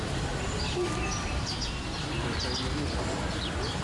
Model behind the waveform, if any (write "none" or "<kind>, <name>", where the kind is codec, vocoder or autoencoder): none